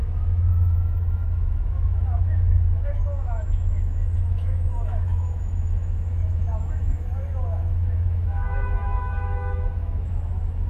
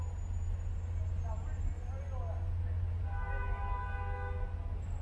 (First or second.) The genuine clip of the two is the second